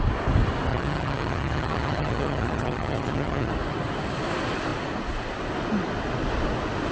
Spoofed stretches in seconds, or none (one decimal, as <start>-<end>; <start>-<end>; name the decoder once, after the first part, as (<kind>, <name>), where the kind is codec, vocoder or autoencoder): 0.7-3.5 (vocoder, HiFi-GAN)

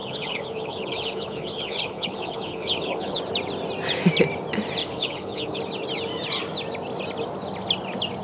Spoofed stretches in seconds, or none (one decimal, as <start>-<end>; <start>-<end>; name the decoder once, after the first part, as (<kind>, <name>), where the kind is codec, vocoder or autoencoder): 0.0-3.2 (codec, HILCodec); 4.8-5.6

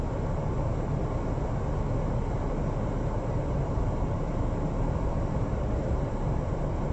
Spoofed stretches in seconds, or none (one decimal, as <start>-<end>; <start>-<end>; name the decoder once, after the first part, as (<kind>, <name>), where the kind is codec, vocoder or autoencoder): 0.0-0.7 (vocoder, BigVGAN v2); 3.4-6.9

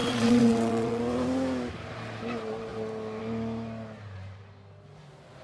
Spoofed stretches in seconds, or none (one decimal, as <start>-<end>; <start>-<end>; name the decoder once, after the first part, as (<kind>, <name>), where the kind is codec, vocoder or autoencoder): 0.0-1.0 (vocoder, WaveNeXt)

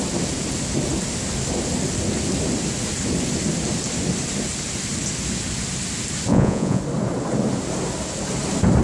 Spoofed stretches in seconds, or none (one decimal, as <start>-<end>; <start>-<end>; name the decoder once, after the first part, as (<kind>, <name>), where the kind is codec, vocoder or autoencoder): 6.3-6.8 (vocoder, Vocos)